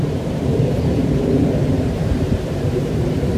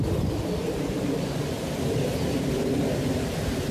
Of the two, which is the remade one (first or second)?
first